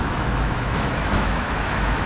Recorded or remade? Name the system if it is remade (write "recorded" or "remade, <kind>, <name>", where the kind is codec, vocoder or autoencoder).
remade, autoencoder, DAC-VAE